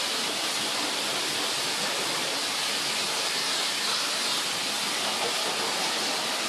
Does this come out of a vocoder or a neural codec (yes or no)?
no